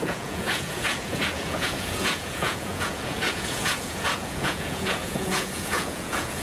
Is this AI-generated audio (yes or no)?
yes